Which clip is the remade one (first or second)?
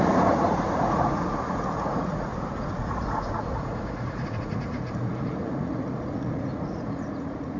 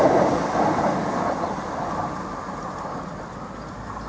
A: first